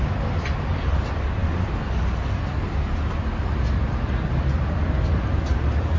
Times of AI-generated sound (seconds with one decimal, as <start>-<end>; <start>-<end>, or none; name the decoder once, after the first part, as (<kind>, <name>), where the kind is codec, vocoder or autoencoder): none